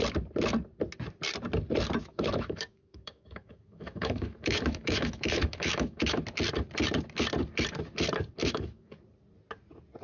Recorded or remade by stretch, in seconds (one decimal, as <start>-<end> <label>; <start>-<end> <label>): 0.0-2.0 recorded; 2.0-6.2 remade; 6.2-8.4 recorded; 8.4-9.0 remade; 9.0-10.0 recorded